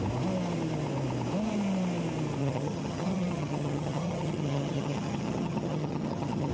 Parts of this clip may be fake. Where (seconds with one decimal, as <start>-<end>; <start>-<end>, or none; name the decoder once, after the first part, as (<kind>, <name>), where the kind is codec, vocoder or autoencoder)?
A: 2.4-6.5 (vocoder, HiFi-GAN)

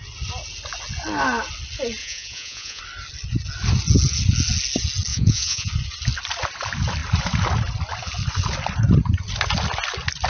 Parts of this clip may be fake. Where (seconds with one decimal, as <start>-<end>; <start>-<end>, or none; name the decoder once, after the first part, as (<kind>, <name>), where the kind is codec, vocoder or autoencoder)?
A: 2.0-2.8 (vocoder, Vocos); 5.1-5.7

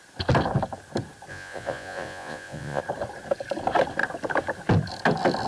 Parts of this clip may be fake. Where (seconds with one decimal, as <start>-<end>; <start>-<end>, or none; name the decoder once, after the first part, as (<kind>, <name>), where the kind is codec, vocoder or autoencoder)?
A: 1.3-2.8 (vocoder, Vocos)

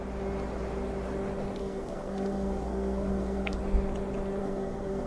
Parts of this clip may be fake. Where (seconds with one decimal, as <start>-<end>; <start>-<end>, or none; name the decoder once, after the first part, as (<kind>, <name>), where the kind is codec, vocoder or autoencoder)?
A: 1.6-3.6 (codec, SNAC); 4.4-5.1